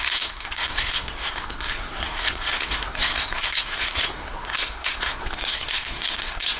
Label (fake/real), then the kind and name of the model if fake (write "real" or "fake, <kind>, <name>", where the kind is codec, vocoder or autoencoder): fake, codec, SNAC